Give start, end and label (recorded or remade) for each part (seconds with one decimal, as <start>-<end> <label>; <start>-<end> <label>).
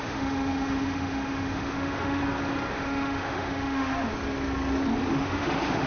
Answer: 0.0-2.2 remade; 2.2-2.7 recorded; 2.7-4.1 remade; 4.1-5.1 recorded; 5.1-5.9 remade